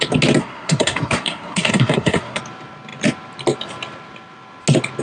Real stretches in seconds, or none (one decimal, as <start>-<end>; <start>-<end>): 0.0-0.4; 2.4-5.0